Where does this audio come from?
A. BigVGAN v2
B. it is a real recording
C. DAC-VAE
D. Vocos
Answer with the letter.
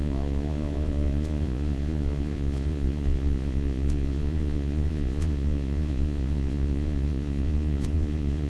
D